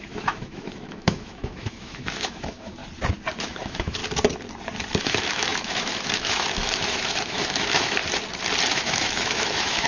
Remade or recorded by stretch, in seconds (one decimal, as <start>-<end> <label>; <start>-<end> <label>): 0.0-2.8 remade; 2.8-3.4 recorded; 3.4-4.0 remade; 4.0-5.0 recorded; 5.0-8.0 remade; 8.0-8.7 recorded; 8.7-9.9 remade